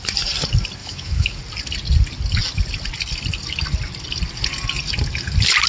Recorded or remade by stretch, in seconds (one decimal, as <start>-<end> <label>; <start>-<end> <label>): 0.0-0.8 recorded; 0.8-1.4 remade; 1.4-5.7 recorded